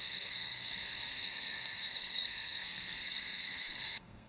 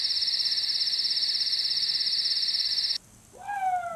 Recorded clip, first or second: second